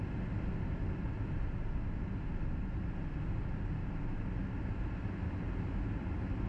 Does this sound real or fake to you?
real